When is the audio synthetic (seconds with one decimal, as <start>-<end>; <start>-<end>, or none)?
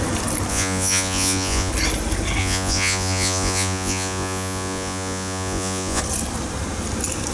0.5-1.7; 2.4-6.0